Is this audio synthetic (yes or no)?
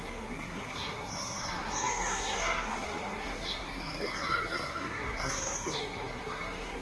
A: yes